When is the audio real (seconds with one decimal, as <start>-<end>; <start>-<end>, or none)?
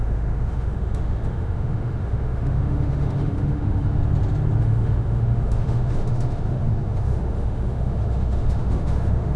4.0-4.6